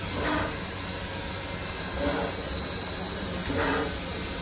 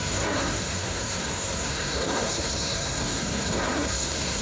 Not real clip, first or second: second